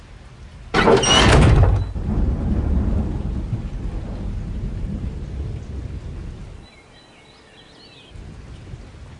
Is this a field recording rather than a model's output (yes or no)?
yes